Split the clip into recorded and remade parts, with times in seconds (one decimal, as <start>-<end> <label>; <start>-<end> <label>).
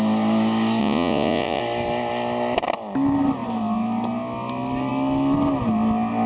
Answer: 0.0-0.8 recorded; 0.8-1.6 remade; 1.6-6.3 recorded